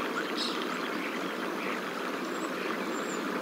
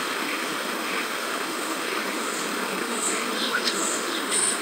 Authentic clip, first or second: first